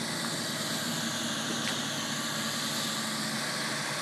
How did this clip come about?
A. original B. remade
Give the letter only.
A